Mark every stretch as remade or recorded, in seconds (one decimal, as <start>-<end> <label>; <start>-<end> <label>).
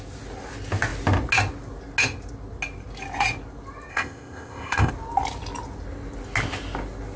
0.0-3.9 recorded; 3.9-4.9 remade; 4.9-7.2 recorded